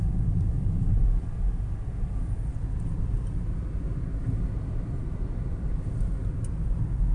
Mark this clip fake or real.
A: fake